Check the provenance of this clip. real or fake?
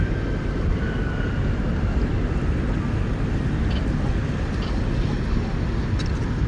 real